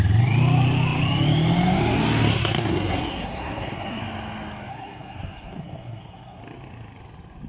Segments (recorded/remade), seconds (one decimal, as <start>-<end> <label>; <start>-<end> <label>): 0.0-2.3 recorded; 2.3-4.0 remade; 4.0-4.7 recorded; 4.7-6.4 remade; 6.4-7.5 recorded